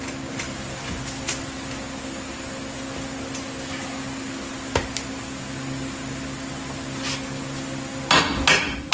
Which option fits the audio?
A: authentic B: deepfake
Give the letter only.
A